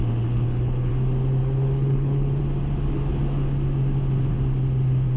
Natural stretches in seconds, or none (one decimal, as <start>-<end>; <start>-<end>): 0.9-1.4; 2.4-5.2